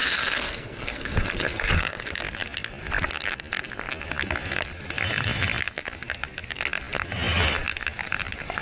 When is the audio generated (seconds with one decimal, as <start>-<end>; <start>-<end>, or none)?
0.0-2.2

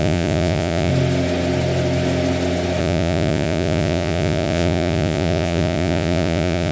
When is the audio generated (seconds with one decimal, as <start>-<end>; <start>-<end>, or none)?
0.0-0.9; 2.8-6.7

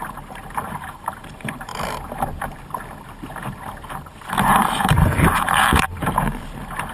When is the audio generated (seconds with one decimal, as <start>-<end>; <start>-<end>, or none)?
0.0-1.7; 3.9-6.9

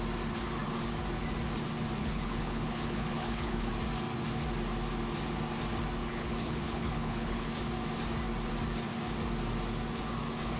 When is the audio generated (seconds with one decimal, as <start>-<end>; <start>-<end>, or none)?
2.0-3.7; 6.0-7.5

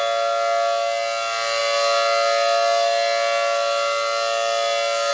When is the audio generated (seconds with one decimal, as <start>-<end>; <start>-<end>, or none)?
none